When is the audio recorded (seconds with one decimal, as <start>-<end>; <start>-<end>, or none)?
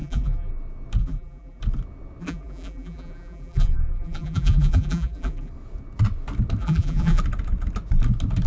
0.5-1.0; 1.6-2.2; 5.5-6.6; 7.2-8.5